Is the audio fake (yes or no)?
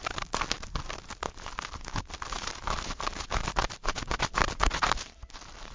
yes